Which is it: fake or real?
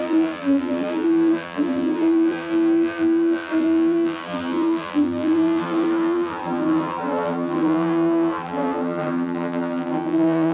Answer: fake